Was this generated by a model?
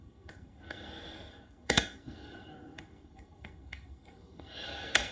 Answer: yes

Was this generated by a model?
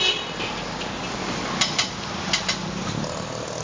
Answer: no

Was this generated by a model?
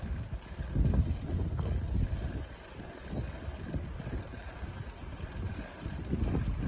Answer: no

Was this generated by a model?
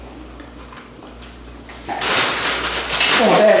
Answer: no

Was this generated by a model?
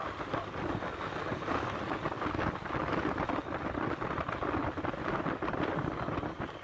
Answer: no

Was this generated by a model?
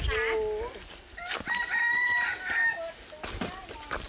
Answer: no